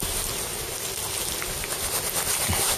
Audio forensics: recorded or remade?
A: recorded